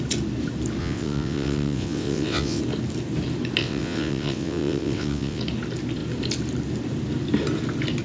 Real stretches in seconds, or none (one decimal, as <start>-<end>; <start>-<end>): 0.0-0.8; 2.6-3.6; 5.4-8.0